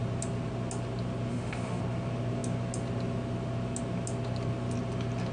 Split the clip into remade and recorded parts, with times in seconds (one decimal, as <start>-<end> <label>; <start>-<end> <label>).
0.0-1.3 recorded; 1.3-1.8 remade; 1.8-5.3 recorded